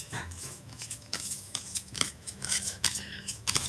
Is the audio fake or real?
fake